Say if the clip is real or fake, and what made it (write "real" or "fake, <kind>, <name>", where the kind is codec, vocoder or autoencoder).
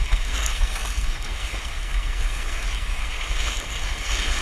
fake, codec, SNAC